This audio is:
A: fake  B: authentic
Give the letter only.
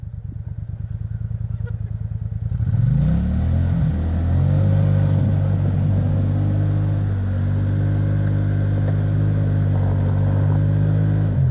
B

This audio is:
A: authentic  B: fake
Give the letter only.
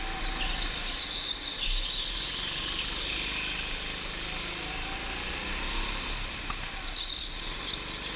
A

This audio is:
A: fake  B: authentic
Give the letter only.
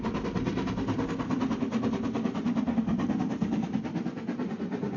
B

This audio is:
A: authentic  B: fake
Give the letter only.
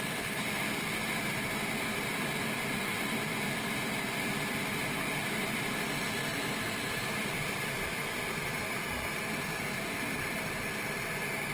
A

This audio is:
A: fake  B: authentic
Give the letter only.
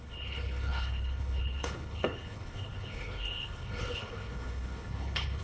A